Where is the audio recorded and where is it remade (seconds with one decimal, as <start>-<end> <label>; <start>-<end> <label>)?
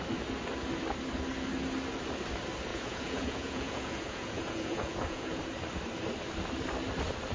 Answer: 0.0-2.7 recorded; 2.7-5.4 remade; 5.4-7.3 recorded